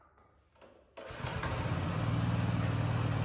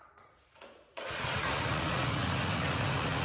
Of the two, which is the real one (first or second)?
first